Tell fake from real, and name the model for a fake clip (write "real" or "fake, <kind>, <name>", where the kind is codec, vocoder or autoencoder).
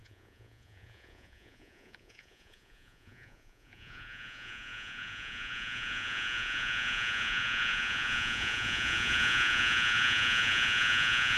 fake, vocoder, Vocos